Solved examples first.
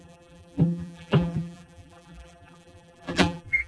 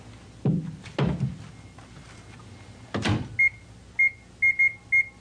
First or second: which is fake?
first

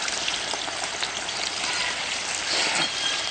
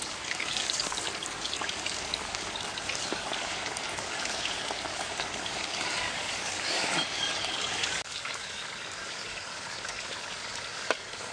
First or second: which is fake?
second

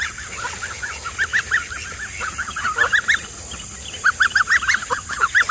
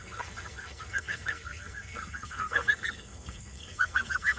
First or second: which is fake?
second